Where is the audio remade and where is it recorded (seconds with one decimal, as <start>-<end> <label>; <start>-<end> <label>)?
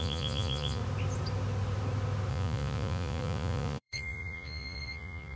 0.0-0.8 remade; 0.8-2.3 recorded; 2.3-5.4 remade